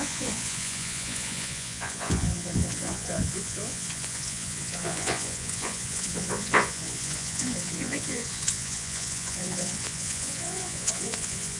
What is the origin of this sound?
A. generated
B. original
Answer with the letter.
A